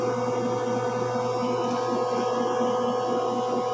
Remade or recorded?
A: recorded